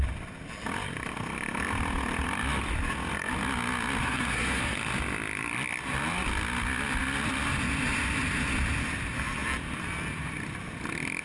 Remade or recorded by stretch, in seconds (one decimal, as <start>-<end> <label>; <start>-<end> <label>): 0.0-4.0 recorded; 4.0-4.6 remade; 4.6-11.2 recorded